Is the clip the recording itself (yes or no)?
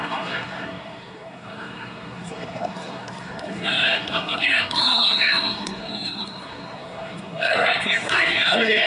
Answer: no